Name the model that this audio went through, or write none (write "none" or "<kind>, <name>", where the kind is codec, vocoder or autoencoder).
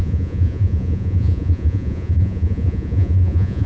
vocoder, Vocos